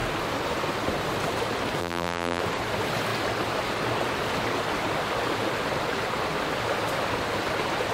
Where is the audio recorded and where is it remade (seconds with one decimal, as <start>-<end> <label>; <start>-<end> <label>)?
0.0-1.8 recorded; 1.8-2.4 remade; 2.4-7.9 recorded